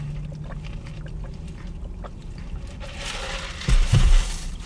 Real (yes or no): yes